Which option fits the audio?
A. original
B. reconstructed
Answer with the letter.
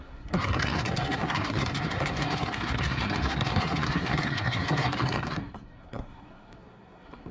B